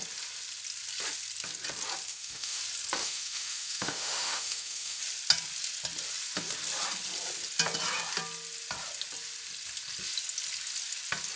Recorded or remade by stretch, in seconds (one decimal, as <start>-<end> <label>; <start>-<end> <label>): 0.0-2.1 recorded; 2.1-2.6 remade; 2.6-3.0 recorded; 3.0-5.0 remade; 5.0-11.4 recorded